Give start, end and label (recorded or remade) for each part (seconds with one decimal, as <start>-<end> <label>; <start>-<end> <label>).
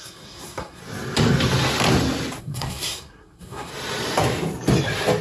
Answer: 0.0-0.8 remade; 0.8-2.4 recorded; 2.4-3.7 remade; 3.7-5.2 recorded